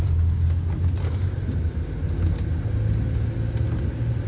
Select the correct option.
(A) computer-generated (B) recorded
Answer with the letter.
B